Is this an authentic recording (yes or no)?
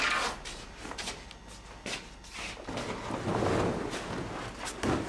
yes